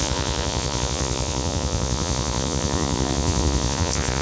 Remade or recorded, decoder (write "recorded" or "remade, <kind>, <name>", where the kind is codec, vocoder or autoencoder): remade, vocoder, Vocos